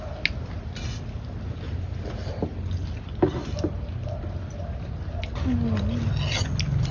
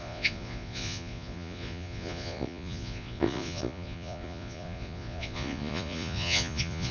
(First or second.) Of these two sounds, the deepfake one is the second